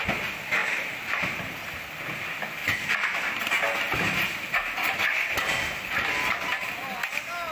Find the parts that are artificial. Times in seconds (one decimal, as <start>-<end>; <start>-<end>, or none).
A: 0.6-1.4; 2.6-3.4